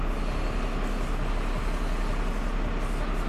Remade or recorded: recorded